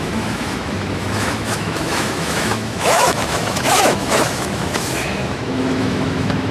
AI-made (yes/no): yes